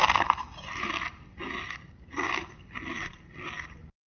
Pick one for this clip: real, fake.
real